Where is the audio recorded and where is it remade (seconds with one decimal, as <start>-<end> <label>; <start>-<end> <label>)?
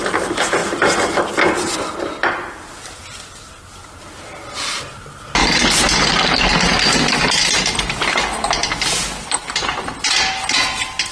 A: 0.0-11.1 recorded